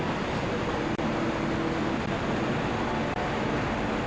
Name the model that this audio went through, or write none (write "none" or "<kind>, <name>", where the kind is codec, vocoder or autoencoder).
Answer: none